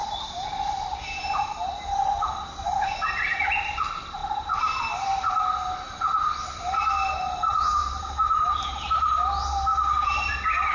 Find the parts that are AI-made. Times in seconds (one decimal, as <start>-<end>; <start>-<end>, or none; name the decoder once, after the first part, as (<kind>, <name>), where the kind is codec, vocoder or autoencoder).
7.8-9.3 (vocoder, BigVGAN v2)